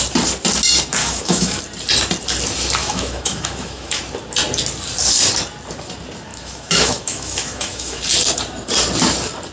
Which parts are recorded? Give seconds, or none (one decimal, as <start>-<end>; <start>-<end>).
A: 0.0-1.0; 1.6-2.8; 4.0-6.3; 8.0-9.5